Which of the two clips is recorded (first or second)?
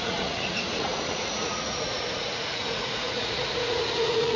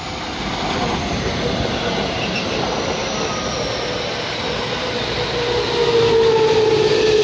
second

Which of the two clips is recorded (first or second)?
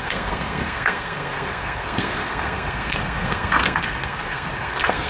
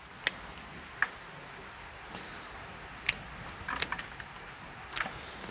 second